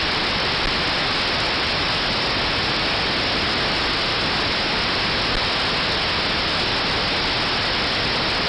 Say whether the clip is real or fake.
real